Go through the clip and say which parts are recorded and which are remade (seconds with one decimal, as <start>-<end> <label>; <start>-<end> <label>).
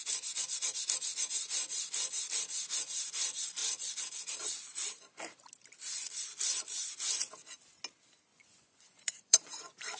0.0-8.3 recorded; 8.3-10.0 remade